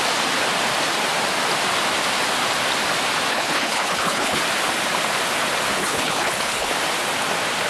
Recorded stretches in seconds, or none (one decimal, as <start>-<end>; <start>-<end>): 0.0-3.3; 4.4-5.8; 6.7-7.7